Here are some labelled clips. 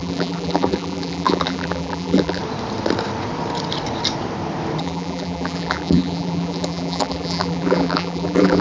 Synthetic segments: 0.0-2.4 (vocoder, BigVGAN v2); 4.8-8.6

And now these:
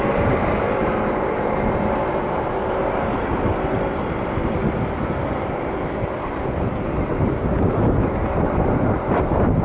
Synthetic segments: 0.0-4.4 (vocoder, BigVGAN v2); 5.0-9.6

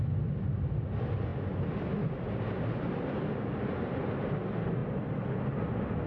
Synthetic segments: 4.8-5.6 (vocoder, BigVGAN v2)

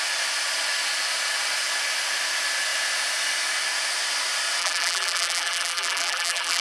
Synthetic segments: 4.6-6.6 (vocoder, BigVGAN v2)

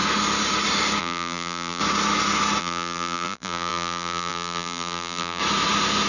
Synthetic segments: 1.0-1.8 (vocoder, BigVGAN v2); 2.6-5.4